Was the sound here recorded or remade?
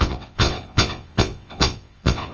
remade